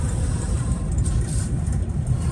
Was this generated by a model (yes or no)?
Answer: yes